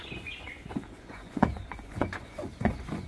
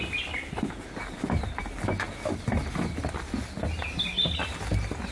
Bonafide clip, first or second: second